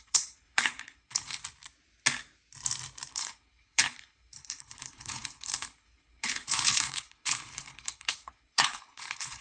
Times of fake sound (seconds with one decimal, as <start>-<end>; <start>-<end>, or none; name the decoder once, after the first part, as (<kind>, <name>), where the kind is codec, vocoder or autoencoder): 0.0-1.4 (codec, HILCodec); 3.1-9.4